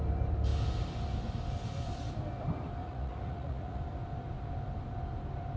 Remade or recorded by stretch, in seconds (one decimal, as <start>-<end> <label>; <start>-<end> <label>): 0.0-2.8 recorded; 2.8-3.8 remade; 3.8-5.6 recorded